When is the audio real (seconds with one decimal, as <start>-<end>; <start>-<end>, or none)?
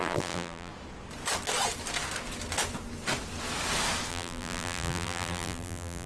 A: 0.7-4.1